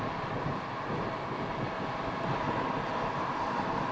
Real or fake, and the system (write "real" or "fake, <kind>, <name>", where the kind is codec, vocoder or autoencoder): real